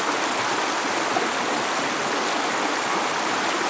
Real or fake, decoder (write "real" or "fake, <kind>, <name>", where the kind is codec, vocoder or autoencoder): real